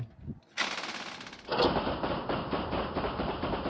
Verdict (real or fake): real